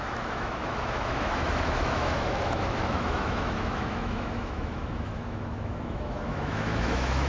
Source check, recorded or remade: remade